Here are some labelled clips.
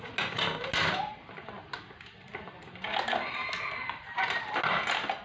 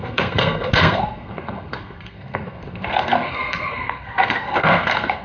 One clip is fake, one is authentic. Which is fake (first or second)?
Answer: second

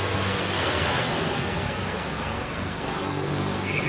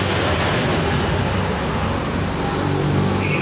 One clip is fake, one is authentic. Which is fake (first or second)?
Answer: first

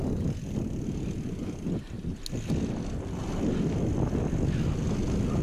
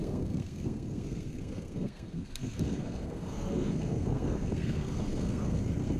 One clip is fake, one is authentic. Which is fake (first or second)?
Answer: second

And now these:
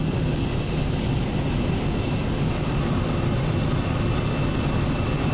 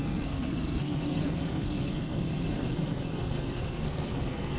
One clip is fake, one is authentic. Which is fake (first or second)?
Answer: second